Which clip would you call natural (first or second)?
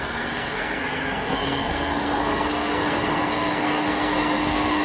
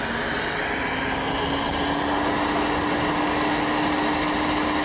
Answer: second